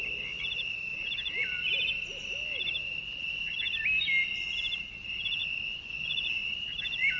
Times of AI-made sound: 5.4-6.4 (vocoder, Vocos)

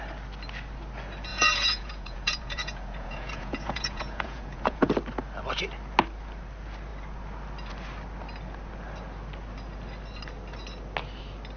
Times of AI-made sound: 1.3-4.9 (vocoder, Vocos)